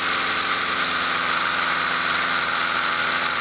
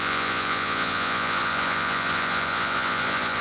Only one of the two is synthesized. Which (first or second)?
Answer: second